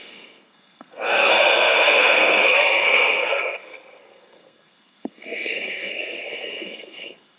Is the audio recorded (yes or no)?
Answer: no